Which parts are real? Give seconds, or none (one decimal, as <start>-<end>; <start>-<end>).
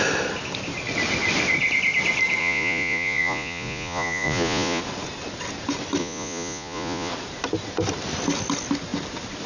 0.0-2.4; 4.8-6.0; 7.1-9.5